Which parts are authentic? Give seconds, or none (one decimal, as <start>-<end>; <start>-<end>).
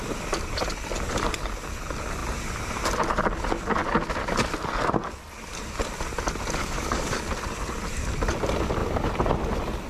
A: 0.0-6.6; 7.3-9.9